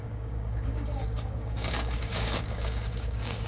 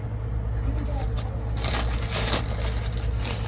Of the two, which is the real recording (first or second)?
second